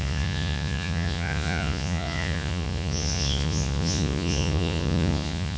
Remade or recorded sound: remade